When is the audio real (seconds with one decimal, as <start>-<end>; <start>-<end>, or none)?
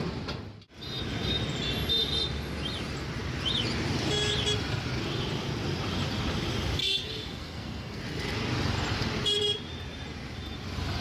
0.0-6.8; 8.0-11.0